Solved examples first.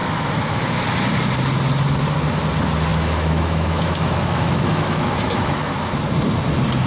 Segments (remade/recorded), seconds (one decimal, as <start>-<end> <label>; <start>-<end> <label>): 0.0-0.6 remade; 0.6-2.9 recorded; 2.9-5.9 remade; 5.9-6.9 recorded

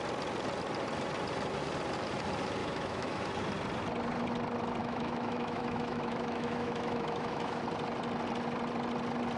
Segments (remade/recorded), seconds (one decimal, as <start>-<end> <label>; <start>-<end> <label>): 0.0-2.6 recorded; 2.6-3.2 remade; 3.2-4.8 recorded; 4.8-7.6 remade; 7.6-9.4 recorded

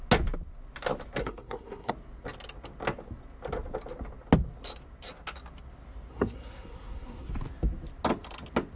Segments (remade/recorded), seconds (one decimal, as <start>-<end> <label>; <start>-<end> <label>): 0.0-1.2 recorded; 1.2-1.9 remade; 1.9-6.1 recorded; 6.1-7.3 remade; 7.3-8.8 recorded